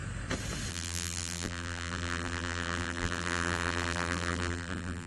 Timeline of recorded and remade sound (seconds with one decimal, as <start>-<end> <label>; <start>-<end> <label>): 0.0-0.7 recorded; 0.7-5.1 remade